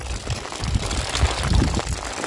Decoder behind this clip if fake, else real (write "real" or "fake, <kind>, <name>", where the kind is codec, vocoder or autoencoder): real